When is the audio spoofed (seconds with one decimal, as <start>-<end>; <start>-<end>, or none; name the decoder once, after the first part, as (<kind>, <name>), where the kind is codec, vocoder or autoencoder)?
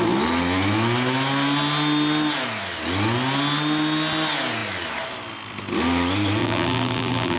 6.4-7.4 (vocoder, BigVGAN v2)